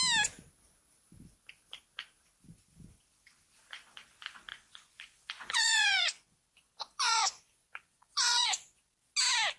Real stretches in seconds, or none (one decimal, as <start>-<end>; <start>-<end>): 0.0-4.5; 8.9-9.6